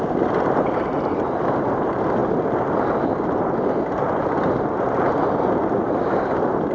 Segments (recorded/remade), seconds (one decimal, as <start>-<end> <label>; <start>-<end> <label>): 0.0-6.7 recorded